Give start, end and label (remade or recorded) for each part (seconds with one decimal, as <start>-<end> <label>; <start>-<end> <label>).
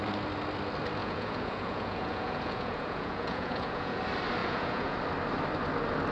0.0-1.0 recorded; 1.0-4.0 remade; 4.0-4.4 recorded; 4.4-5.0 remade; 5.0-6.1 recorded